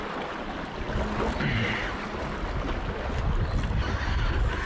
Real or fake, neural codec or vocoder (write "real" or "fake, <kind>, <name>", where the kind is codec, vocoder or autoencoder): real